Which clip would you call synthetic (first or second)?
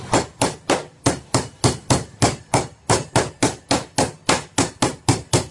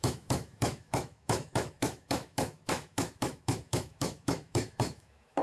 second